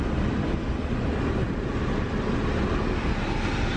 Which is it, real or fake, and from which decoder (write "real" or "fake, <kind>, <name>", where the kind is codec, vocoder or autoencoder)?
real